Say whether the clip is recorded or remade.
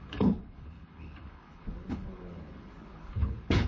remade